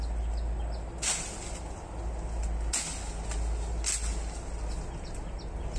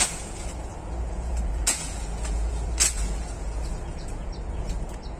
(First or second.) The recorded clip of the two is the first